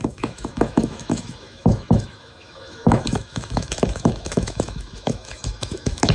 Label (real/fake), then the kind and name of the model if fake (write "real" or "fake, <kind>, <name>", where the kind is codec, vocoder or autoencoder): fake, autoencoder, DAC-VAE